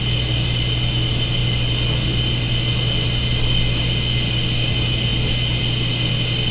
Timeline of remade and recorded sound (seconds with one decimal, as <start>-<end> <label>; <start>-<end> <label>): 0.0-6.5 recorded